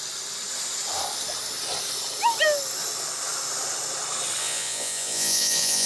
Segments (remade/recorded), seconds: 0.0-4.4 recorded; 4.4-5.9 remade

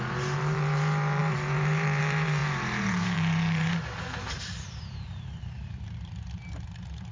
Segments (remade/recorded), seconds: 0.0-7.1 remade

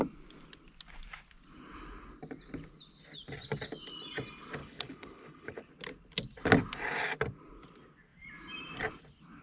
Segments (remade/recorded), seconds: 0.0-4.6 recorded; 4.6-5.7 remade; 5.7-9.4 recorded